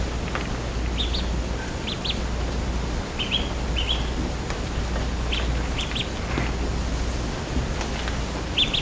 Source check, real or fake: real